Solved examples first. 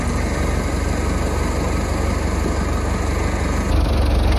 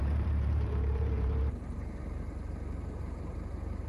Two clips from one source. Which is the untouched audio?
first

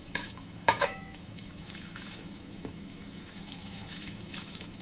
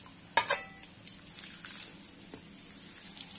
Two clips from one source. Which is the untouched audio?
second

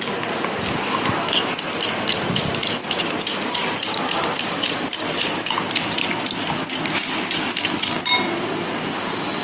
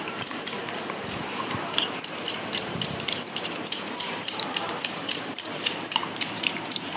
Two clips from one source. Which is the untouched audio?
first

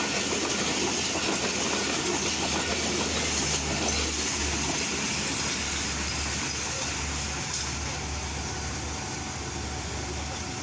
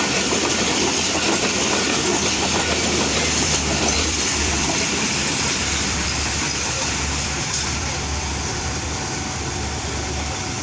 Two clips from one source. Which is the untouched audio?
first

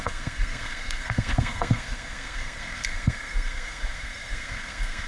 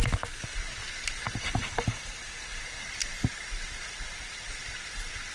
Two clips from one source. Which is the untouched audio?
second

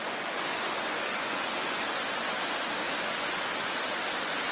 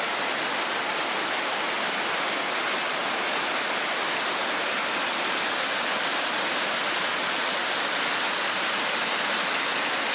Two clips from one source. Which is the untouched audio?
second